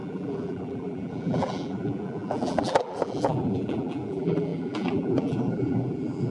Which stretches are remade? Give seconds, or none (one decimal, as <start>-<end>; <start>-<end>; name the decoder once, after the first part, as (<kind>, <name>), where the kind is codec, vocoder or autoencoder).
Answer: 0.0-6.3 (vocoder, BigVGAN v2)